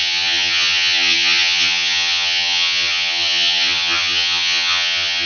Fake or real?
fake